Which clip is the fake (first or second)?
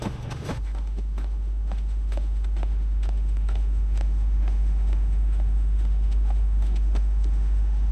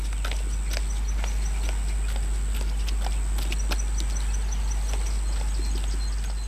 first